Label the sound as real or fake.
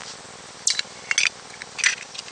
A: real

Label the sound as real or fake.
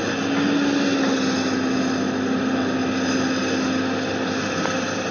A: real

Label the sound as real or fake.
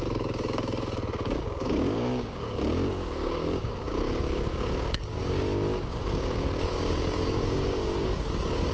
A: fake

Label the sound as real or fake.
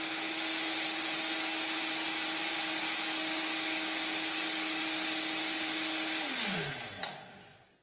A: real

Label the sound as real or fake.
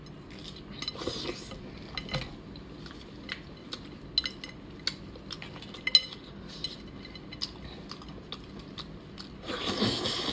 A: real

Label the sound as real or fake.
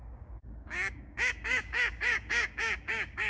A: fake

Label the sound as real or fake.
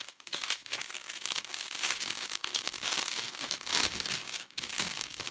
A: fake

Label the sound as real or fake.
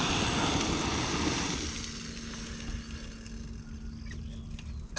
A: real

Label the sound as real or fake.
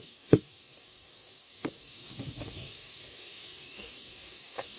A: fake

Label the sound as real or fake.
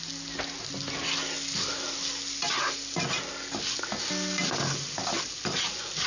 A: real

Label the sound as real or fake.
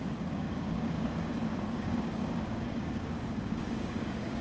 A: fake